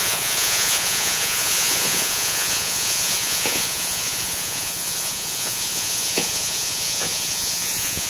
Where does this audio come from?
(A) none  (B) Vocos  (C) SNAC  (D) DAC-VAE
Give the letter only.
B